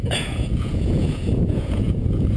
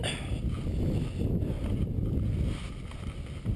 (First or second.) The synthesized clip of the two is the first